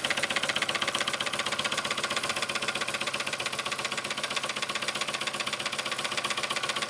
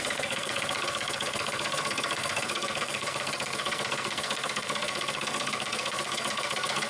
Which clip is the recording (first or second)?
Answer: first